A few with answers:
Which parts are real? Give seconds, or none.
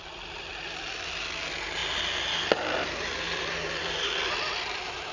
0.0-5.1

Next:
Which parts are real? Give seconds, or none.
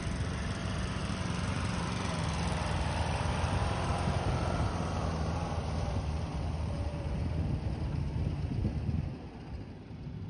0.0-0.6; 1.1-3.9; 4.4-6.3; 7.3-10.3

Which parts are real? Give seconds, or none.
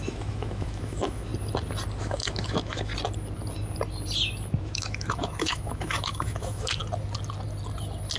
1.3-2.0; 2.9-4.6; 6.8-8.2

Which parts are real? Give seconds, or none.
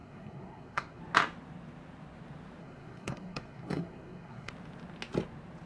1.0-2.6; 4.5-5.7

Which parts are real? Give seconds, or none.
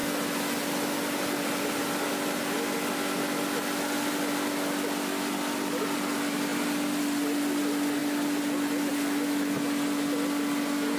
0.0-11.0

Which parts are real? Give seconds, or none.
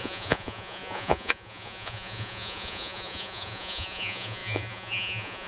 none